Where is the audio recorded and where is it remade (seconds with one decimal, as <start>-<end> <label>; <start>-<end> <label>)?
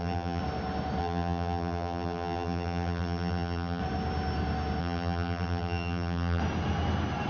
0.0-0.4 remade; 0.4-1.0 recorded; 1.0-3.8 remade; 3.8-4.8 recorded; 4.8-6.4 remade; 6.4-7.3 recorded